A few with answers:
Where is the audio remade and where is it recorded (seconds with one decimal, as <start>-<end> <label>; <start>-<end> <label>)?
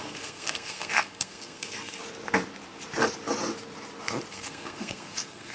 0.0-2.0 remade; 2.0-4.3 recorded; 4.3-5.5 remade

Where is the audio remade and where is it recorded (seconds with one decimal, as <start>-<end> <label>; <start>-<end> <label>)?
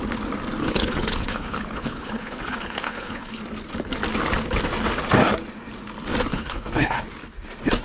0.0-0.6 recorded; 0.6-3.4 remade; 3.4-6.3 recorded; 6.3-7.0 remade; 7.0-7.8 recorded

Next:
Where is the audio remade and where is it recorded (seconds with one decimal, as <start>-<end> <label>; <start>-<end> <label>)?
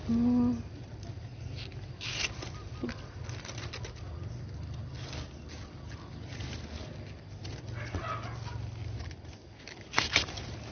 0.0-10.7 recorded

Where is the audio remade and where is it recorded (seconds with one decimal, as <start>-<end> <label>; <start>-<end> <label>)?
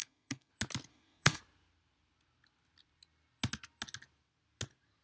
0.0-0.5 remade; 0.5-0.9 recorded; 0.9-1.4 remade; 1.4-5.0 recorded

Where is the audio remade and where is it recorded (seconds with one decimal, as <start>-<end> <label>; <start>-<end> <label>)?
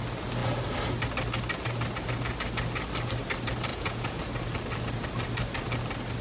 0.0-3.7 recorded; 3.7-4.2 remade; 4.2-6.2 recorded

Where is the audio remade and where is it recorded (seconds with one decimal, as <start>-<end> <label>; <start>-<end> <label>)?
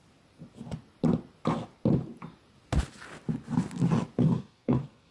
0.0-4.2 recorded; 4.2-5.1 remade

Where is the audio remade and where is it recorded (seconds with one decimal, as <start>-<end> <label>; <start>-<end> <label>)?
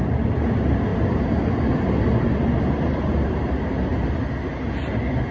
0.0-5.3 recorded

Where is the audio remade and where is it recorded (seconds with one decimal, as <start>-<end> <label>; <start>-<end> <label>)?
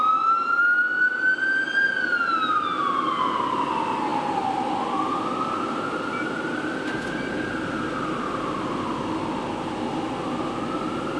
0.0-11.2 recorded